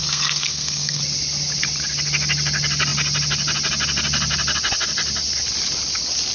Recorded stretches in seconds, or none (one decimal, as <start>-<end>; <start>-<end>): 1.0-6.3